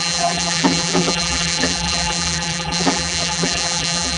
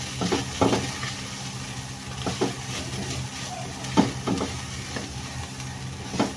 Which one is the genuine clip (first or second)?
second